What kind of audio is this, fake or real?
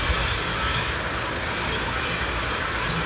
real